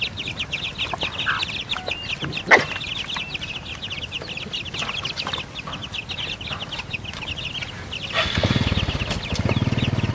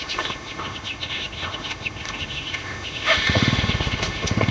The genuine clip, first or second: first